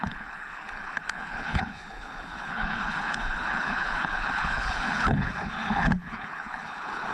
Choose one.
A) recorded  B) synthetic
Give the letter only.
B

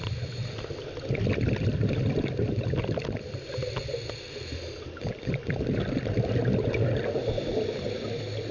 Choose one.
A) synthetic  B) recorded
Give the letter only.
B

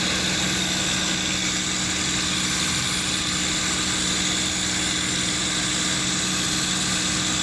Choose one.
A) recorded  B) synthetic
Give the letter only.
A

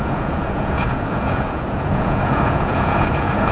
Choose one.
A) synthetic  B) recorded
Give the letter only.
A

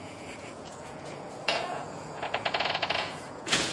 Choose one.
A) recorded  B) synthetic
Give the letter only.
B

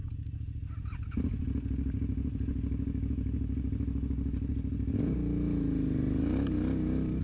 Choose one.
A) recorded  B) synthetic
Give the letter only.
A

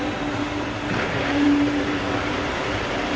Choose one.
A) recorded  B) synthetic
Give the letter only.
B